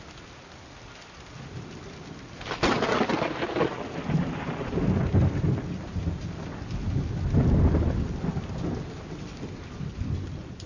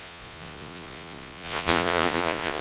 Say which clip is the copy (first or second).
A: second